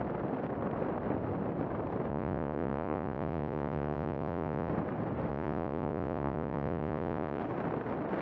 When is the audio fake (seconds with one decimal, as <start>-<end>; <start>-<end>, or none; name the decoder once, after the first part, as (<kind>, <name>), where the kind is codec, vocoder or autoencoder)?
2.1-4.7 (vocoder, Vocos); 5.3-7.4